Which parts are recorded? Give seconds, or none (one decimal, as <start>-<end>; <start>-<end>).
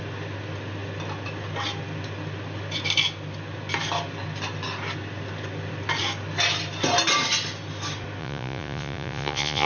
0.0-8.2